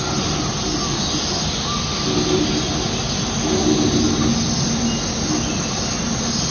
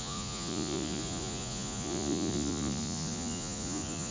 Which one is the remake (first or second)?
second